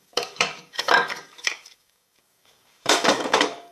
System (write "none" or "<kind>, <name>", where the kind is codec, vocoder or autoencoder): codec, DAC